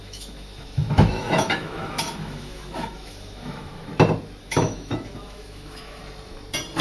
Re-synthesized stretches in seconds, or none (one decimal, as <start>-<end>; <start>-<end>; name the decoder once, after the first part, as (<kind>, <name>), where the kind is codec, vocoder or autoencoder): 0.0-3.9 (autoencoder, DAC-VAE); 4.4-6.0